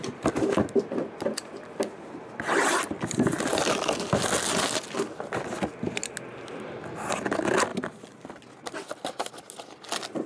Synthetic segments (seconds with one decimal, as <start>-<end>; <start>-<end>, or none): none